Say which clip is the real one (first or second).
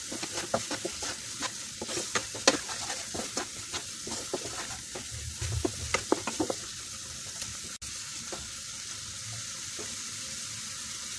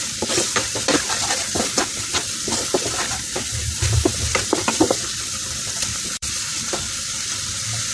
first